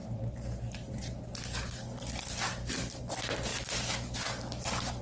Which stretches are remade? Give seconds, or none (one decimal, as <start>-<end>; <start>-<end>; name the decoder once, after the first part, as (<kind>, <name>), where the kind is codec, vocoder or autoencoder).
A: none